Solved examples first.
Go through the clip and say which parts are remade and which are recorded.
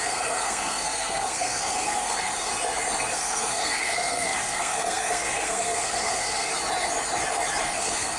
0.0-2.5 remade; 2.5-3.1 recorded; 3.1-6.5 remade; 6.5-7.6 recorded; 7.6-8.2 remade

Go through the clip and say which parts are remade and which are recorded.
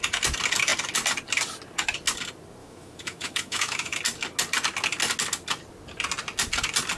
0.0-2.6 recorded; 2.6-4.0 remade; 4.0-7.0 recorded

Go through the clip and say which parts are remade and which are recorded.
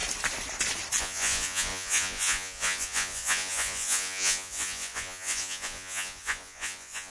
0.0-1.0 recorded; 1.0-7.1 remade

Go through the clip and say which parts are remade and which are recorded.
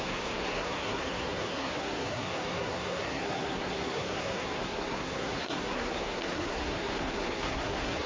0.0-8.1 remade